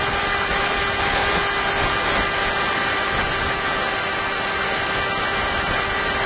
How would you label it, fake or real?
real